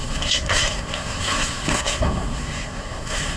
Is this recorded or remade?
remade